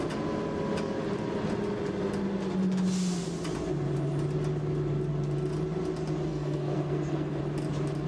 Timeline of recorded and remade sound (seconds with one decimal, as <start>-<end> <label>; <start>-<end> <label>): 0.0-6.3 recorded; 6.3-7.4 remade; 7.4-8.1 recorded